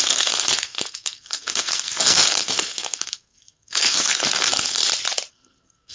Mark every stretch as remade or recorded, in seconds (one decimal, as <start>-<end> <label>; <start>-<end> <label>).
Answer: 0.0-4.8 remade; 4.8-5.3 recorded; 5.3-5.9 remade